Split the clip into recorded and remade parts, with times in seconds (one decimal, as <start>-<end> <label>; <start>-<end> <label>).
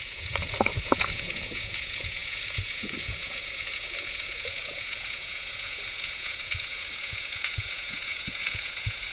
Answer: 0.0-9.1 remade